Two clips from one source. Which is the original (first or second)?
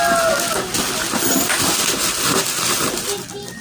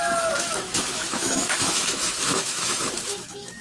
first